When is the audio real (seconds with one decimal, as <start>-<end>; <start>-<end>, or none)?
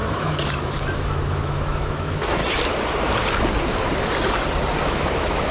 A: 2.4-4.8